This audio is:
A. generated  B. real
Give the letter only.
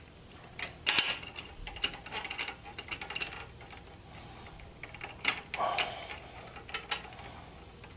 B